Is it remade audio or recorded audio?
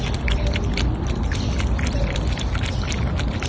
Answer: recorded